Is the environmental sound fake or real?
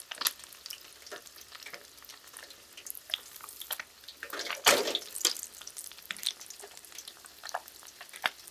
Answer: real